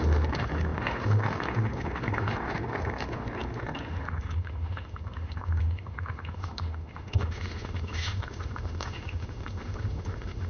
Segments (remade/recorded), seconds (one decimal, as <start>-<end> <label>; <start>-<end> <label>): 0.0-10.5 remade